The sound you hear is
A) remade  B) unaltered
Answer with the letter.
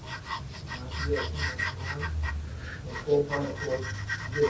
B